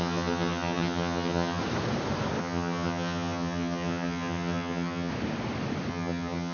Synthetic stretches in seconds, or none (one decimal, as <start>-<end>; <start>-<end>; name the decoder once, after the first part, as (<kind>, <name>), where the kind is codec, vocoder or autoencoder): 0.0-1.6 (vocoder, HiFi-GAN); 2.4-5.1; 5.9-6.5